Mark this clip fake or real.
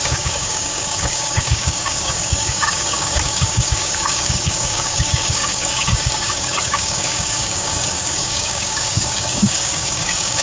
fake